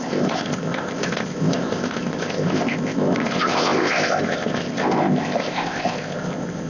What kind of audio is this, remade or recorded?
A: remade